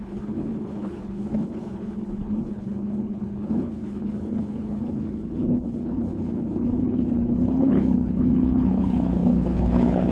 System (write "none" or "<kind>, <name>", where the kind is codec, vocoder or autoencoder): codec, HILCodec